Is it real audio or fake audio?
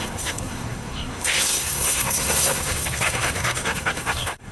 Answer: fake